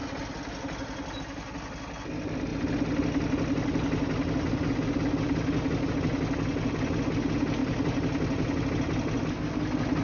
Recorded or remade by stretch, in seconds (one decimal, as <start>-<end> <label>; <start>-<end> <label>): 0.0-7.6 recorded; 7.6-8.7 remade; 8.7-10.0 recorded